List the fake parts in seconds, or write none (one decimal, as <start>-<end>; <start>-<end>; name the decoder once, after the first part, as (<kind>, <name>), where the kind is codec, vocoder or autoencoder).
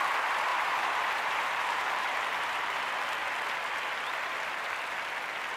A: 0.5-2.8 (vocoder, BigVGAN v2)